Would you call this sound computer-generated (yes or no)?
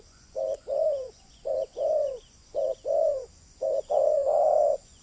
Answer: yes